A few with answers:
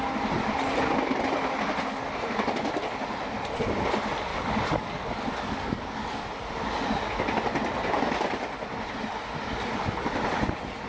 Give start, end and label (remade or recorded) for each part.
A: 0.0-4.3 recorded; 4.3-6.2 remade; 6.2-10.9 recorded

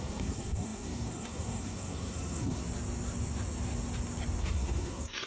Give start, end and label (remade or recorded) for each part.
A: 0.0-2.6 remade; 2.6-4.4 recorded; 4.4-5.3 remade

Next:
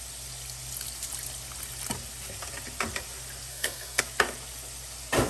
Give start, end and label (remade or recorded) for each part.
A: 0.0-3.5 recorded; 3.5-4.0 remade; 4.0-5.3 recorded

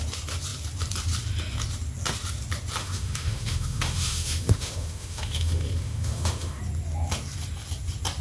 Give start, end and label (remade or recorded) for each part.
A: 0.0-2.8 recorded; 2.8-6.6 remade; 6.6-8.2 recorded

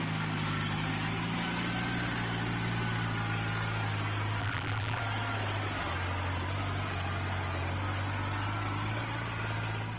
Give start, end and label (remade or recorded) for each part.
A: 0.0-4.4 recorded; 4.4-5.0 remade; 5.0-10.0 recorded

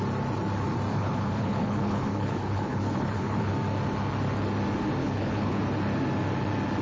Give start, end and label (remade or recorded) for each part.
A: 0.0-0.9 recorded; 0.9-3.5 remade; 3.5-5.0 recorded; 5.0-5.6 remade; 5.6-6.8 recorded